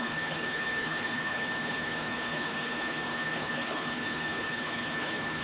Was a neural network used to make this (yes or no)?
yes